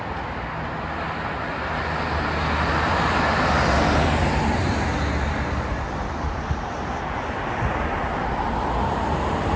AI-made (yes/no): no